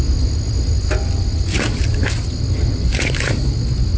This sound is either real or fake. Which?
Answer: real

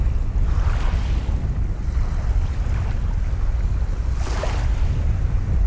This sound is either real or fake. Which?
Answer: real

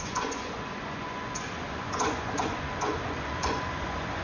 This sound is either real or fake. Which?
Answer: fake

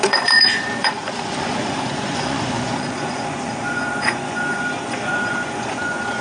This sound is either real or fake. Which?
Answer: fake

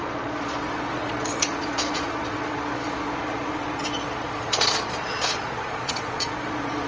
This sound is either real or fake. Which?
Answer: fake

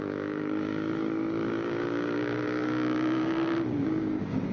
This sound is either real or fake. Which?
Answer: fake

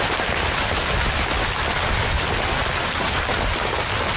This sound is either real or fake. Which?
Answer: real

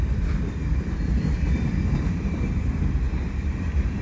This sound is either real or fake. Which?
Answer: fake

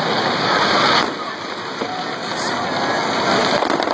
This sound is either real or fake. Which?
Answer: real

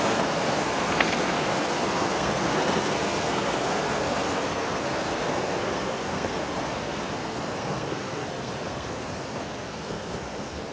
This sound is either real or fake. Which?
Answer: fake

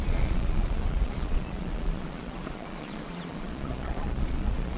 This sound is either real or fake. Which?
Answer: fake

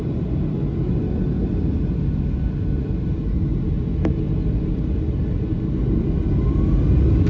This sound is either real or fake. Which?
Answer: real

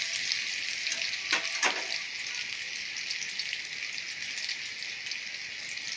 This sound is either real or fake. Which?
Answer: real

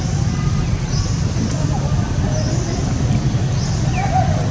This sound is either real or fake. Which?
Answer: real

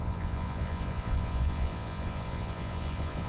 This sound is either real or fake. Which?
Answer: fake